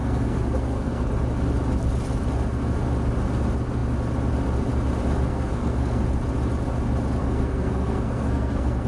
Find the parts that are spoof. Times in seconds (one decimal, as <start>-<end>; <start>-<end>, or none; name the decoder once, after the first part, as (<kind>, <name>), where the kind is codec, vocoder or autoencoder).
0.0-1.1 (codec, SNAC); 5.3-6.0; 7.2-8.9